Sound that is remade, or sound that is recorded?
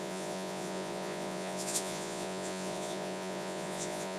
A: remade